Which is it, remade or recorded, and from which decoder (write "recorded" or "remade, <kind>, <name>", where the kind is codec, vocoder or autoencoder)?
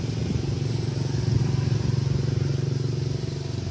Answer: recorded